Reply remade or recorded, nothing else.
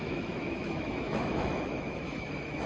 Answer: remade